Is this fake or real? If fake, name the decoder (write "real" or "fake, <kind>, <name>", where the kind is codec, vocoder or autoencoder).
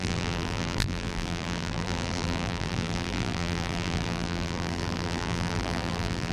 fake, vocoder, BigVGAN v2